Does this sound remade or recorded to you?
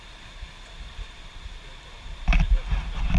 remade